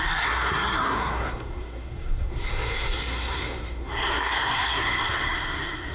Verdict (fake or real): fake